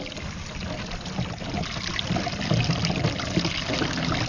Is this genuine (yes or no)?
yes